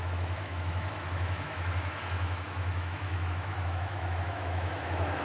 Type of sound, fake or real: fake